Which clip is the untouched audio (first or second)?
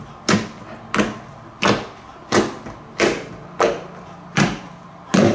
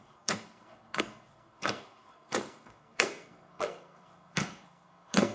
first